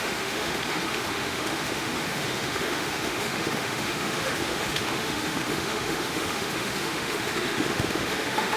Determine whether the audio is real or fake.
fake